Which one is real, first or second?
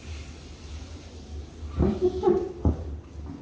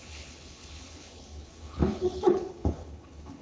first